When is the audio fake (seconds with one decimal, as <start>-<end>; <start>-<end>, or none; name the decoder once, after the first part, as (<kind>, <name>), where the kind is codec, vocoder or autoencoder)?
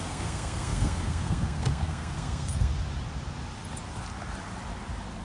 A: 0.0-2.7 (codec, SNAC)